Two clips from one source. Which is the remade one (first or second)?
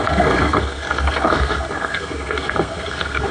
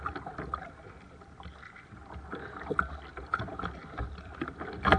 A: first